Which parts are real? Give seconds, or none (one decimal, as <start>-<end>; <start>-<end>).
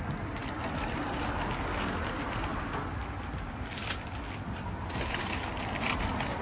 0.0-6.4